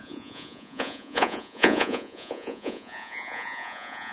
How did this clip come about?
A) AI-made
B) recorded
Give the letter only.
A